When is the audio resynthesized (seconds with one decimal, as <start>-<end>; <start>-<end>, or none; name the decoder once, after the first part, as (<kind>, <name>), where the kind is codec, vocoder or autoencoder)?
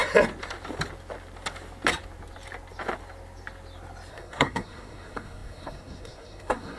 4.1-6.8 (codec, SNAC)